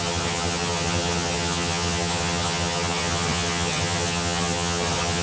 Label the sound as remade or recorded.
remade